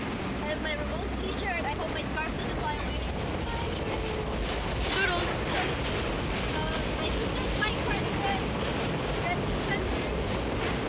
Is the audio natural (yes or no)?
yes